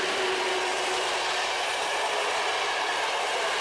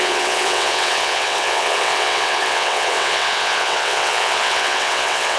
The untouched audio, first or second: first